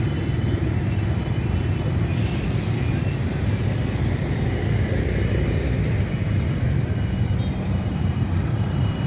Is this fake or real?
real